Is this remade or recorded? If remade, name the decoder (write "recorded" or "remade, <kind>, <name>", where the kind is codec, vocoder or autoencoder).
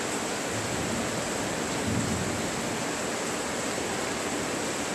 recorded